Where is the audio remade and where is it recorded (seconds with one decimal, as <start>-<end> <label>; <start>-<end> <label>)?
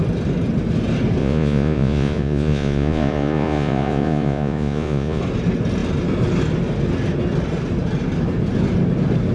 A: 0.0-1.2 recorded; 1.2-5.2 remade; 5.2-9.3 recorded